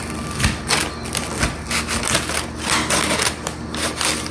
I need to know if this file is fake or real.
real